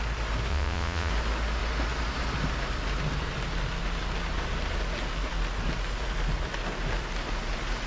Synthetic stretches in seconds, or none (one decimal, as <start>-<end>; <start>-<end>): 0.5-1.1